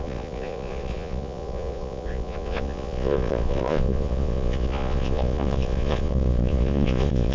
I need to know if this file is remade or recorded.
remade